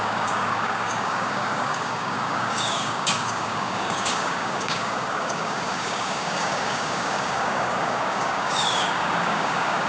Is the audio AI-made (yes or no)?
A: yes